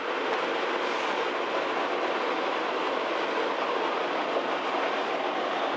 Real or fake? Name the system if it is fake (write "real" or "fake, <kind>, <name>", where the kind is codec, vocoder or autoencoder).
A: real